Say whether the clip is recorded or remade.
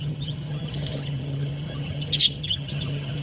remade